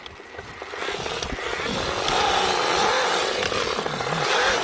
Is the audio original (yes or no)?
yes